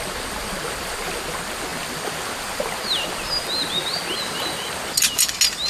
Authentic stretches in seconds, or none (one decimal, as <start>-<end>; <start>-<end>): 0.0-5.7